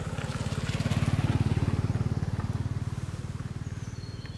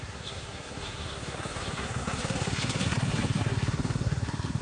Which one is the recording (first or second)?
first